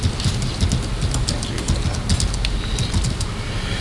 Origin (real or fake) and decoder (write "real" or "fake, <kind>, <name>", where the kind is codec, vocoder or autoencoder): real